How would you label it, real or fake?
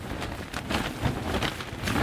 real